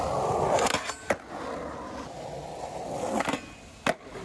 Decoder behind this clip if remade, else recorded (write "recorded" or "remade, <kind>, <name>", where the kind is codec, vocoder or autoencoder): recorded